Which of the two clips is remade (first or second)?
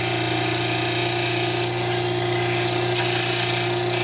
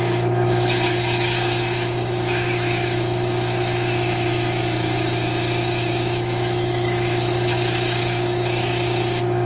second